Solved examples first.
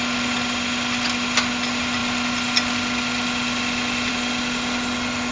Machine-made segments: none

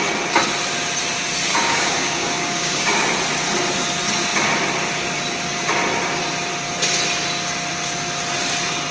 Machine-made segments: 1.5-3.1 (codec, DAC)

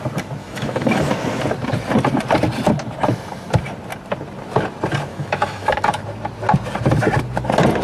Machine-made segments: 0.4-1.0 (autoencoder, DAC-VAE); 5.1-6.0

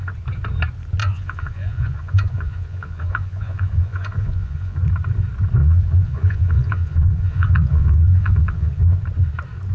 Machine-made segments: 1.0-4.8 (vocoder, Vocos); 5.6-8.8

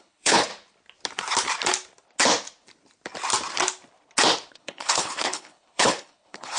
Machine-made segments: 0.0-0.5 (codec, HILCodec); 4.5-6.6